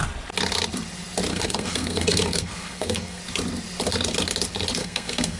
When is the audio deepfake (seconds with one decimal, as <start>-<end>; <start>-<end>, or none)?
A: 1.3-3.2; 4.8-5.4